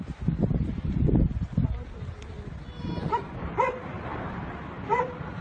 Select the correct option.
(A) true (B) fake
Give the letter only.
B